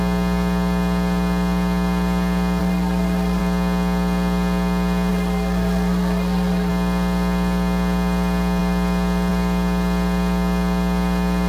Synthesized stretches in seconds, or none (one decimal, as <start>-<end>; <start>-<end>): 2.6-3.4; 5.1-6.7